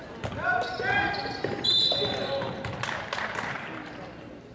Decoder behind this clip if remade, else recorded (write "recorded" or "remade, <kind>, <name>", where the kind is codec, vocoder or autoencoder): recorded